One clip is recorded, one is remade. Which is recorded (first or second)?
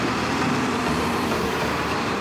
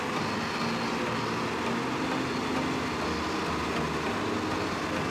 second